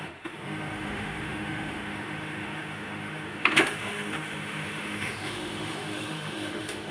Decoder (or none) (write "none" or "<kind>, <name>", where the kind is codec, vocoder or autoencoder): autoencoder, DAC-VAE